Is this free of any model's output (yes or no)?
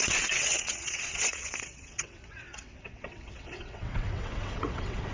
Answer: no